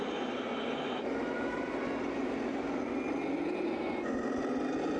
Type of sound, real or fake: real